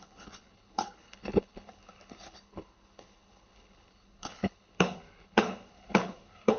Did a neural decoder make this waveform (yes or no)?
yes